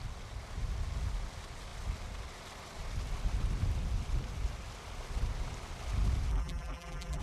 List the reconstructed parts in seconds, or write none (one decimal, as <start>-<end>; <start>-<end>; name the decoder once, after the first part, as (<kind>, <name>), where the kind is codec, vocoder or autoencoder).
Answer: 6.3-7.2 (vocoder, BigVGAN v2)